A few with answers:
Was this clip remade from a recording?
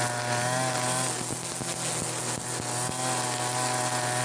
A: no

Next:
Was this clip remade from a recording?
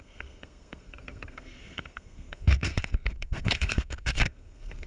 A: yes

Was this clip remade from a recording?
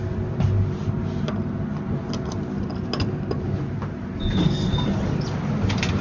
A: no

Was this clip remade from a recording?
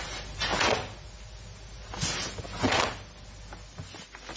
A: no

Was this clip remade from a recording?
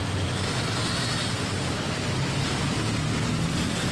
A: no